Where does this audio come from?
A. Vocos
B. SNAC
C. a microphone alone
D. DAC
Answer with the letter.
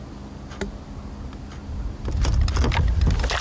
C